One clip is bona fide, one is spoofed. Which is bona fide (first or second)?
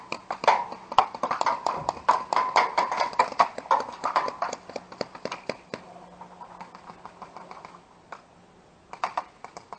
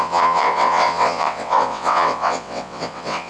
first